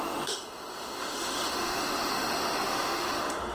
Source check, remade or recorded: remade